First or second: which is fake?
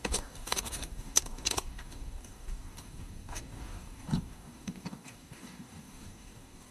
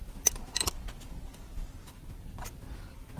first